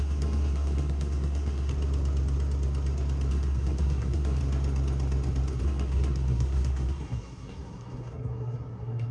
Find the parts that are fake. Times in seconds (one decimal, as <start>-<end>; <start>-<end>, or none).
0.0-1.7; 3.3-4.4; 5.6-9.1